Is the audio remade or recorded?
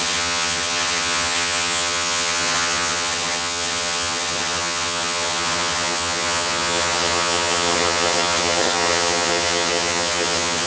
remade